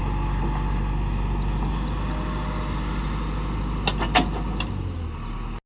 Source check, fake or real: real